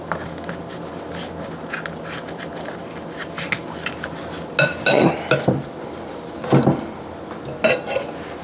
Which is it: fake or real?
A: real